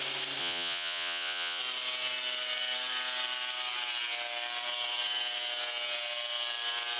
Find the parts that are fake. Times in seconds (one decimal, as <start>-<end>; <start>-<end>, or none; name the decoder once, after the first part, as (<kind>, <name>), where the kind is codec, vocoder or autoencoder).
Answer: 0.4-1.6 (vocoder, Vocos)